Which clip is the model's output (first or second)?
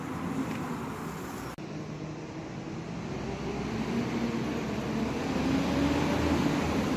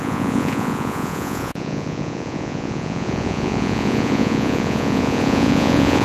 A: second